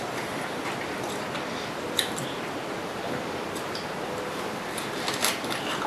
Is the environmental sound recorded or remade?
remade